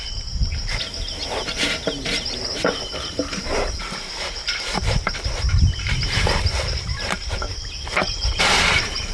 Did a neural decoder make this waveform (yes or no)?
yes